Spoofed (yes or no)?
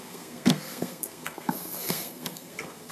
yes